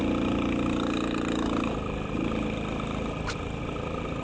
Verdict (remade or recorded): recorded